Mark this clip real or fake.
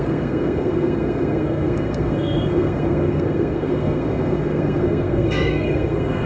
fake